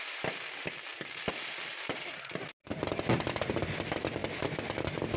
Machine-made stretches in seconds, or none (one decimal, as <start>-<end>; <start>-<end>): 0.0-0.9; 1.7-2.6; 3.5-5.2

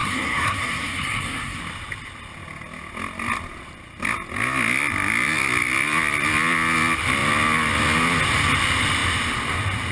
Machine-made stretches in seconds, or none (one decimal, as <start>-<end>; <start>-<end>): 0.0-1.6

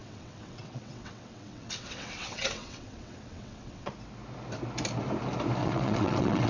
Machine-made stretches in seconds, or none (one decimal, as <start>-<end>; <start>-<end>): 0.0-3.9; 5.6-6.5

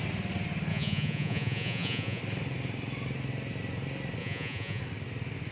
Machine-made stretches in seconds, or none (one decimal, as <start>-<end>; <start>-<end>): 0.7-2.2; 4.2-4.8

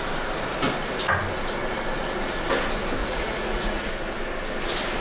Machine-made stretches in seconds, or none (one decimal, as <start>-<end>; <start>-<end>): 3.0-3.9

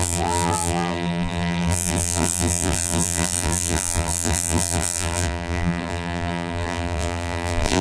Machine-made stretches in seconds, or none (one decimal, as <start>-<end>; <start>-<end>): 0.0-7.8

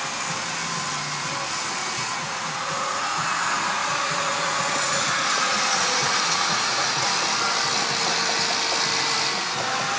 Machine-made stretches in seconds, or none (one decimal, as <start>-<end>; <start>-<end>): 1.8-7.1